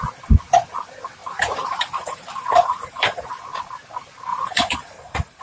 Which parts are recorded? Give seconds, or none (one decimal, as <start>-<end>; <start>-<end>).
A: 0.0-1.2; 3.3-4.3